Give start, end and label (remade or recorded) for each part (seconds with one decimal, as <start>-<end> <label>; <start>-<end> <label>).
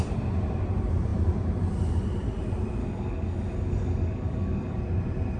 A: 0.0-2.8 recorded; 2.8-4.8 remade; 4.8-5.4 recorded